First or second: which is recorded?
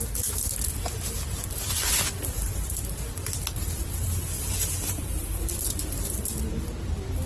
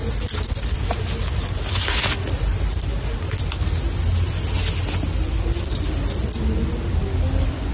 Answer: second